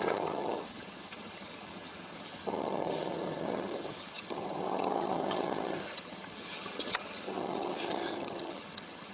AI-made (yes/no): yes